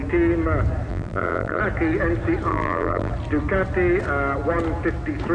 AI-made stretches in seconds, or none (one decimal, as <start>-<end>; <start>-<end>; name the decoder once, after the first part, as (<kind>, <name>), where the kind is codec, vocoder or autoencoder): 0.9-1.6 (vocoder, BigVGAN v2); 2.5-3.1